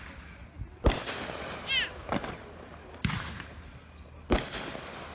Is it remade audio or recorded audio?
recorded